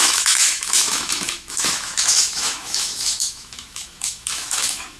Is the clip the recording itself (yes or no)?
no